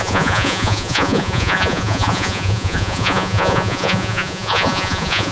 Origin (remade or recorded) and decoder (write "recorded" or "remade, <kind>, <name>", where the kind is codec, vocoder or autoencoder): remade, vocoder, Vocos